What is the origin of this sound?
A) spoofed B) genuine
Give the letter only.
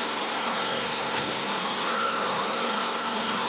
A